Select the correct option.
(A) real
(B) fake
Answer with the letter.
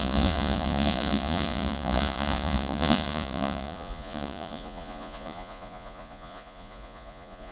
B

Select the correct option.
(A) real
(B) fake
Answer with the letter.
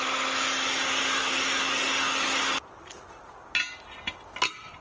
A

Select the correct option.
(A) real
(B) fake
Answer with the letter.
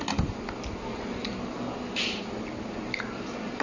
A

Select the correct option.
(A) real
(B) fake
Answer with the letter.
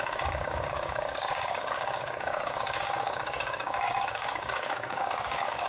B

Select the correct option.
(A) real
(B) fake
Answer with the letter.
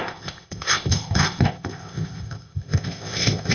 B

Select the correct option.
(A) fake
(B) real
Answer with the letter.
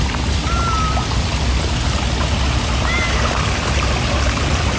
B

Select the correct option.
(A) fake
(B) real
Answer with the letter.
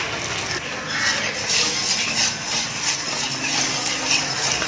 B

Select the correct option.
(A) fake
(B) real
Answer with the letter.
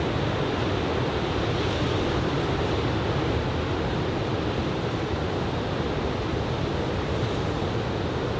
B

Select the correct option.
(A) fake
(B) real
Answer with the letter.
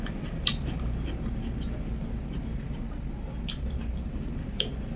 B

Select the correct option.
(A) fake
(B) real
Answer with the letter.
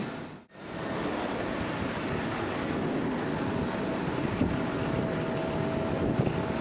B